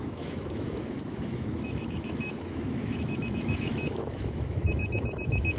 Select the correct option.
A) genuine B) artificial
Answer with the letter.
B